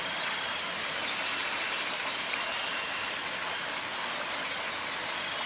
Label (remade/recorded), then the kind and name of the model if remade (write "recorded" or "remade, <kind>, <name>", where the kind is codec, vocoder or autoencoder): recorded